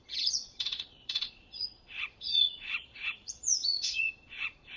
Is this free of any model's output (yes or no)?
no